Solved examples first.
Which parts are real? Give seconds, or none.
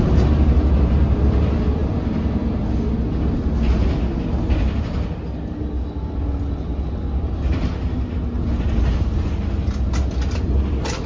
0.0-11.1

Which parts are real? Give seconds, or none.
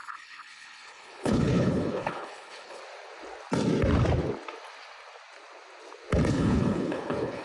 2.8-6.3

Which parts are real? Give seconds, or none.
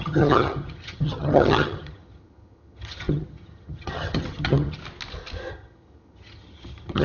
4.8-5.5